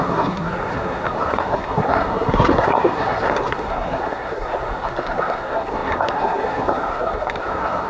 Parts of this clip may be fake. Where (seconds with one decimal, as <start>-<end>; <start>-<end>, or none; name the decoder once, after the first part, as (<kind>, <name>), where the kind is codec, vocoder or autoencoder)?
0.0-7.9 (codec, SNAC)